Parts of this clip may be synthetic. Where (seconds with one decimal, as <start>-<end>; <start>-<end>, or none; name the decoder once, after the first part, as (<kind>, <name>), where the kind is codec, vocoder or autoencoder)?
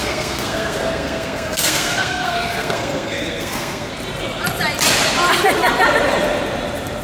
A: 0.0-3.9 (codec, SNAC)